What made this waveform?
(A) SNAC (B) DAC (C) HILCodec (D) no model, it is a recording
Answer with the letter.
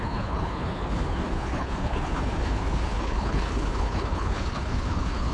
C